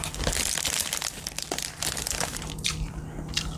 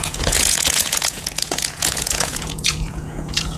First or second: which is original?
first